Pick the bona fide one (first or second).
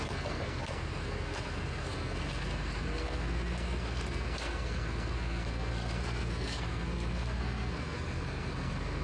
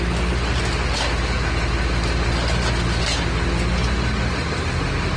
second